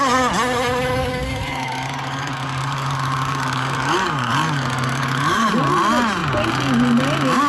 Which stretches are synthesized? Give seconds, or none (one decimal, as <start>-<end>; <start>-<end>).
1.0-5.5